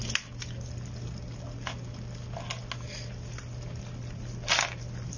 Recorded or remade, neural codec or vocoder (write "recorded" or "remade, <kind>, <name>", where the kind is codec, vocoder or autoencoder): recorded